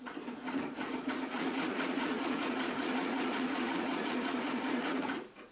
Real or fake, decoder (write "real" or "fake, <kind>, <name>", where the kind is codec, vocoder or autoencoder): fake, vocoder, Vocos